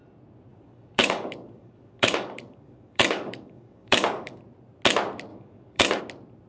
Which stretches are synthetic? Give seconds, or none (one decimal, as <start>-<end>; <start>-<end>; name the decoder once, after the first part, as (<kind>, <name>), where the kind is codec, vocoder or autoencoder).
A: 0.5-4.4 (codec, DAC); 5.3-6.0